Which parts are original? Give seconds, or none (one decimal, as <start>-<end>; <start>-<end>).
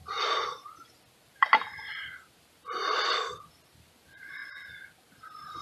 0.0-5.6